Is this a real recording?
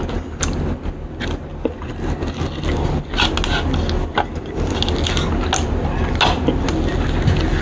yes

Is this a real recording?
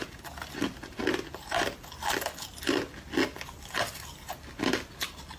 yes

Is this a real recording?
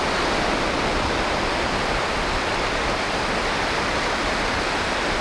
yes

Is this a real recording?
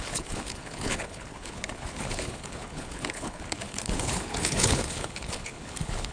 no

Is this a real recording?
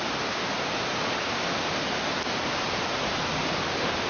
yes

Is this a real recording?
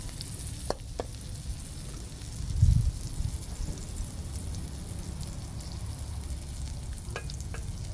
yes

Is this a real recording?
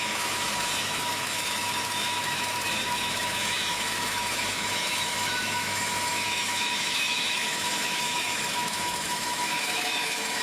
no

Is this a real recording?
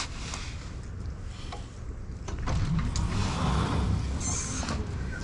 yes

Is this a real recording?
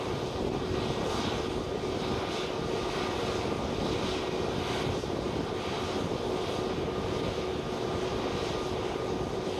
yes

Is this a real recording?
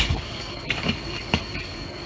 no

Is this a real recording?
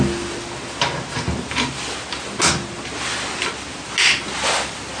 yes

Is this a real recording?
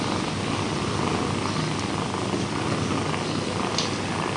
yes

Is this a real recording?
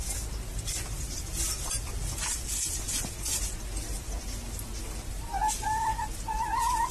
yes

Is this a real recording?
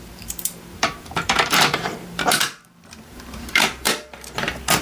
no